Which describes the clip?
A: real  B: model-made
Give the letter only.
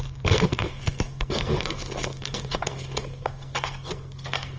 B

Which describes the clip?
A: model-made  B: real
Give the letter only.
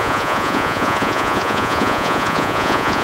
A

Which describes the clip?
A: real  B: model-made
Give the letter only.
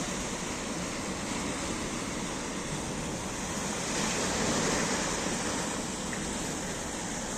A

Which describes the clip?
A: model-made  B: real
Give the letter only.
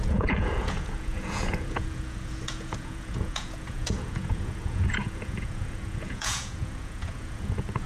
A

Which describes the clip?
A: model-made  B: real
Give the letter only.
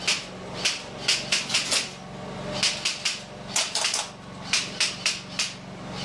B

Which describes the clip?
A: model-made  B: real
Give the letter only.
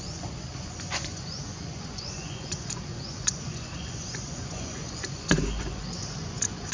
A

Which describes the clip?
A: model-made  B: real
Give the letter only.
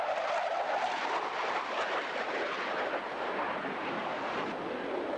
B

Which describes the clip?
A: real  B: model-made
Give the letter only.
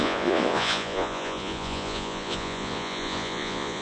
B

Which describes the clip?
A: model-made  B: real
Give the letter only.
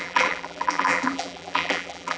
A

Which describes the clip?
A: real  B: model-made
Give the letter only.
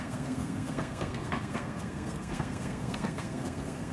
B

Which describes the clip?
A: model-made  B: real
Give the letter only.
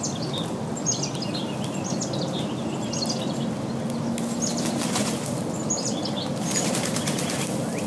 B